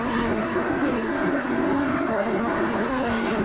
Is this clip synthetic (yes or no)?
yes